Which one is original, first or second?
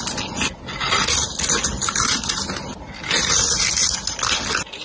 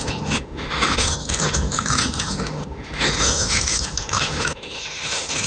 first